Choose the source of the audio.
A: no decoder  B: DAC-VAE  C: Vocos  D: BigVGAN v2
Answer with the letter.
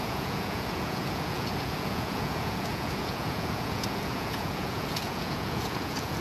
C